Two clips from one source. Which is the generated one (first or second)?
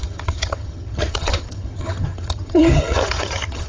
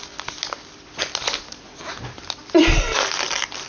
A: first